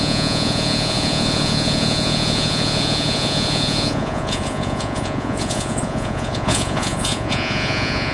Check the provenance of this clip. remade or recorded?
remade